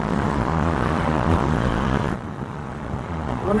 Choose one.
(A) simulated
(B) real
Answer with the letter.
A